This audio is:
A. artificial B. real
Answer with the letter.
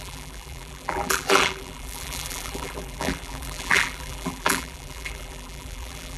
A